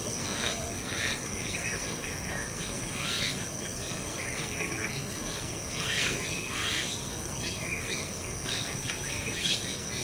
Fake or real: fake